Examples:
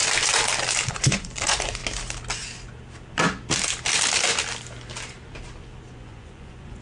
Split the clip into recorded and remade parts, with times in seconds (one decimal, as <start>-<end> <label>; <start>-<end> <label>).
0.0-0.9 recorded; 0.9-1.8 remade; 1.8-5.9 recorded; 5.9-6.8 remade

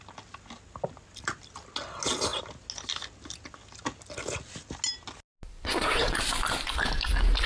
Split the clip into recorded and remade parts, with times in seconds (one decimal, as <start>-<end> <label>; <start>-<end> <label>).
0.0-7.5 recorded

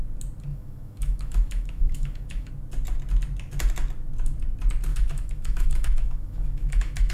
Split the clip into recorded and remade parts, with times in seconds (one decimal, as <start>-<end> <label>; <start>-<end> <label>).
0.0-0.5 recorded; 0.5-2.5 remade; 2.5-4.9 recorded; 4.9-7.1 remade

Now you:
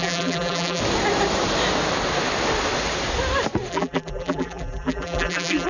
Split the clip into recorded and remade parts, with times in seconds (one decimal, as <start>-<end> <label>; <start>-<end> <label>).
0.0-0.8 remade; 0.8-3.7 recorded; 3.7-5.7 remade

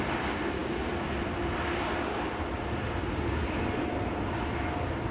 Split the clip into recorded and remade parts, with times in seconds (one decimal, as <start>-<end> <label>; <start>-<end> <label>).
0.0-5.1 recorded

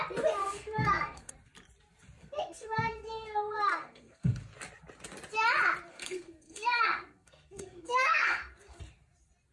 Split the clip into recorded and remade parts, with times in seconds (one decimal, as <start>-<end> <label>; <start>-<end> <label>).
0.0-0.4 recorded; 0.4-1.3 remade; 1.3-2.2 recorded; 2.2-4.4 remade; 4.4-5.9 recorded; 5.9-8.8 remade; 8.8-9.5 recorded

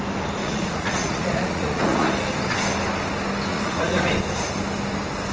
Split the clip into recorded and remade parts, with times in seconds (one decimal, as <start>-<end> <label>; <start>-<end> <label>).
0.0-0.4 recorded; 0.4-2.1 remade; 2.1-3.5 recorded; 3.5-4.1 remade; 4.1-5.3 recorded